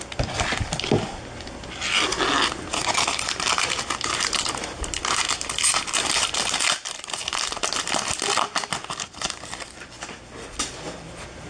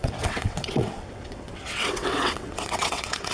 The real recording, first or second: first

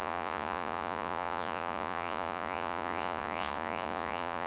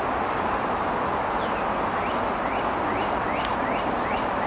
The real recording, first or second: second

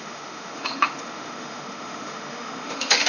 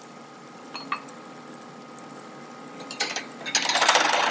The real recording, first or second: second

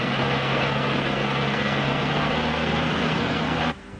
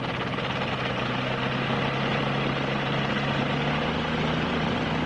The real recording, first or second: second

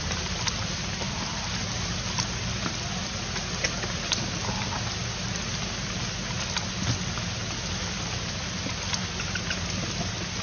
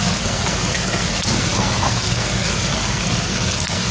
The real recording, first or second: first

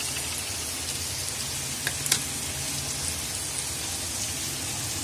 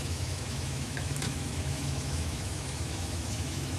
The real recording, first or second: first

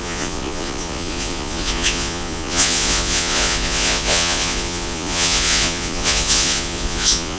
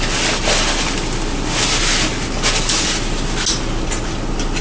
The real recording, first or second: second